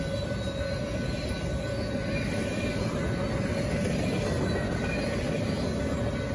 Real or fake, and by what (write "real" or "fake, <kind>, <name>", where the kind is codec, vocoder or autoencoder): real